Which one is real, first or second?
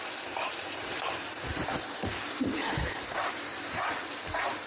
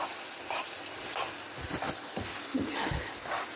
second